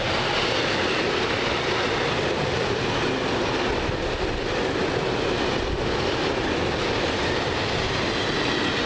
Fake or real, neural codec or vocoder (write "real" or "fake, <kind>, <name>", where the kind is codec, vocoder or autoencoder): real